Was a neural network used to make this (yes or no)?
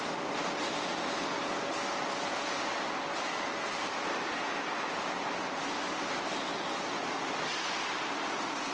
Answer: no